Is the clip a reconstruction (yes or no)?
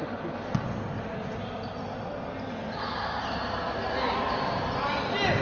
no